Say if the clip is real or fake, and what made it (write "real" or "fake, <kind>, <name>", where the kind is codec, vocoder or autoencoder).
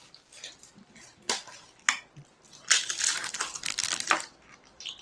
fake, vocoder, BigVGAN v2